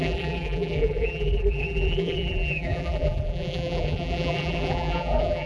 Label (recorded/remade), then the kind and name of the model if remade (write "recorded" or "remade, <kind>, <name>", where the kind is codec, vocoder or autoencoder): remade, vocoder, BigVGAN v2